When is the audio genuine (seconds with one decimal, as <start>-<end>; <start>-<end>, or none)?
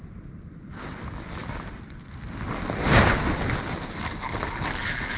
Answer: 0.0-5.2